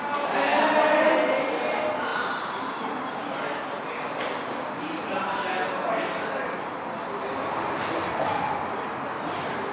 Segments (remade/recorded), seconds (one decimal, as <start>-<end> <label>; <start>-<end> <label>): 0.0-9.7 recorded

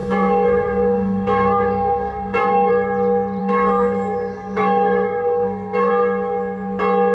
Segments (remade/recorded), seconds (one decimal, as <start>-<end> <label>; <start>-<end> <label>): 0.0-2.7 remade; 2.7-3.4 recorded; 3.4-5.9 remade; 5.9-7.1 recorded

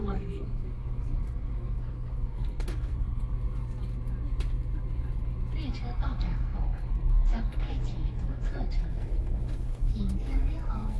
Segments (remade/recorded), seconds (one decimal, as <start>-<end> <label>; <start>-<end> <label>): 0.0-3.2 remade; 3.2-5.8 recorded; 5.8-11.0 remade

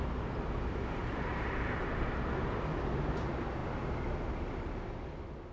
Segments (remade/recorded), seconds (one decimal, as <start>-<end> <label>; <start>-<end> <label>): 0.0-1.0 recorded; 1.0-2.0 remade; 2.0-5.5 recorded

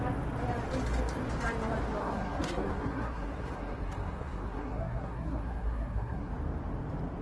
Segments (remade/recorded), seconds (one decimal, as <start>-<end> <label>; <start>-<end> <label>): 0.0-2.0 recorded; 2.0-6.3 remade; 6.3-7.2 recorded